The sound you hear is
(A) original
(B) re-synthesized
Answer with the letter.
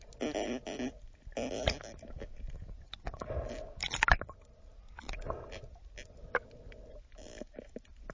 A